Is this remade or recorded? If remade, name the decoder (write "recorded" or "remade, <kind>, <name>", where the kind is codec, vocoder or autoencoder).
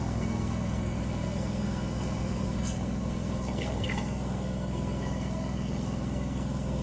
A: remade, codec, SNAC